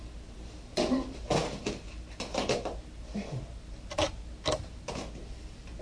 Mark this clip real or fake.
real